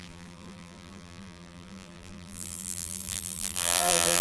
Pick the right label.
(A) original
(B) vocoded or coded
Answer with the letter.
B